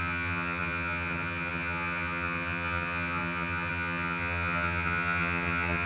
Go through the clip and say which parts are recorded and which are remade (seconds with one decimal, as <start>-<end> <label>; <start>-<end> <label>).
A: 0.0-5.9 remade